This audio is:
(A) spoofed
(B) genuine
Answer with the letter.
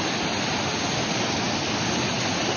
B